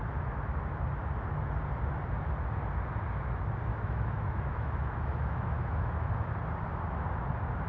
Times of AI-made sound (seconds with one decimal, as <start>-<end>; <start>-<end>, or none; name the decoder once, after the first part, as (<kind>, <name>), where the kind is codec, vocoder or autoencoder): 3.7-6.1 (autoencoder, DAC-VAE)